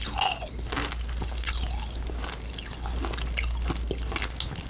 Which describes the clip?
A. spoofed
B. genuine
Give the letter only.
B